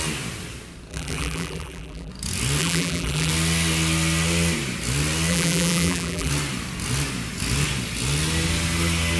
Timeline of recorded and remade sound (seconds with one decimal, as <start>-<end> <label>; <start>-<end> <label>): 0.0-0.9 recorded; 0.9-2.1 remade; 2.1-2.6 recorded; 2.6-3.3 remade; 3.3-5.3 recorded; 5.3-6.3 remade; 6.3-9.2 recorded